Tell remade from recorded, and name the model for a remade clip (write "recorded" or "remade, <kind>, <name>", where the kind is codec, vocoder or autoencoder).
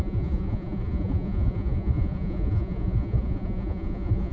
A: remade, vocoder, Vocos